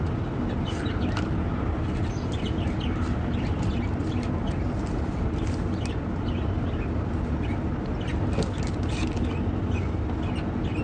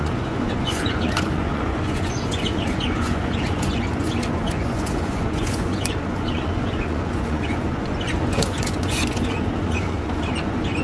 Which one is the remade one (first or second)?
second